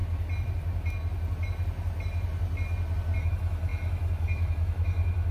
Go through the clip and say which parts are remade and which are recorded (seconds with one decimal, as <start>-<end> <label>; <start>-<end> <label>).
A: 0.0-3.2 recorded; 3.2-5.3 remade